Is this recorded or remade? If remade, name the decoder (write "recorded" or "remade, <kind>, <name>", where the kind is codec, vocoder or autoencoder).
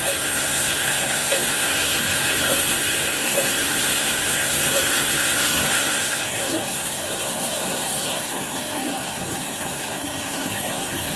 remade, codec, SNAC